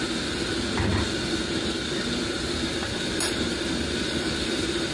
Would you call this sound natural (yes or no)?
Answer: yes